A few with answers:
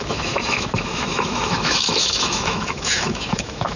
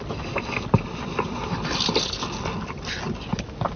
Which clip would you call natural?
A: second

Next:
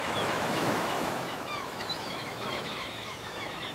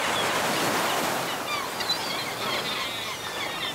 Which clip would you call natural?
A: second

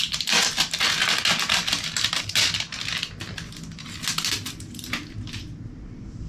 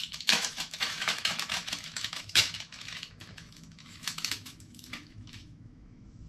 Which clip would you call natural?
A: first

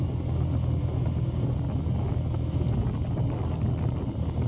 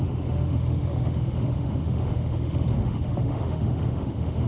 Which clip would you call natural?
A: first